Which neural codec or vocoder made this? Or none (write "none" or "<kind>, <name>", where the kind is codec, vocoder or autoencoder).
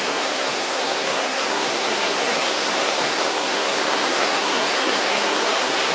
codec, SNAC